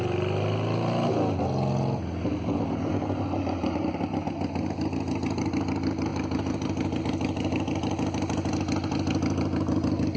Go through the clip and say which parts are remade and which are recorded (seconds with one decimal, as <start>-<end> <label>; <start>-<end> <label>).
0.0-10.2 recorded